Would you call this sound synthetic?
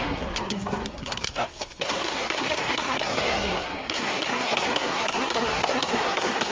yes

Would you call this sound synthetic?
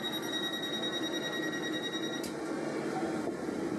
no